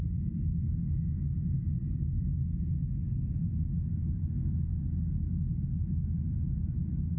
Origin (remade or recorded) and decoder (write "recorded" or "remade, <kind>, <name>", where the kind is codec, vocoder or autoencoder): recorded